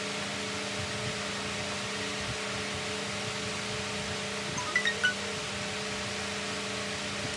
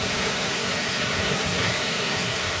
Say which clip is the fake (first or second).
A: second